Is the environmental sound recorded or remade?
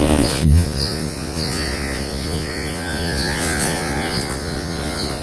remade